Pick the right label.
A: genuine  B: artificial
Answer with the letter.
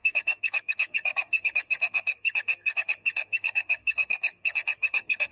B